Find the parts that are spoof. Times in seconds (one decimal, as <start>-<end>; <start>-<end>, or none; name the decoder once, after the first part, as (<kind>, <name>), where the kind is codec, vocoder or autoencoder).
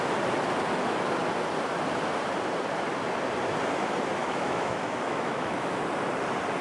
4.2-5.8 (autoencoder, DAC-VAE)